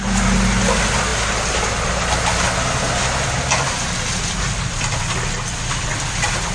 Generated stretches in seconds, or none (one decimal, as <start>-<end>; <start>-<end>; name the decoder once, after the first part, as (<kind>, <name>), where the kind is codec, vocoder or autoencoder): none